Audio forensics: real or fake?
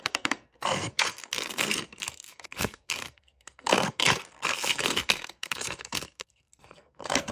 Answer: fake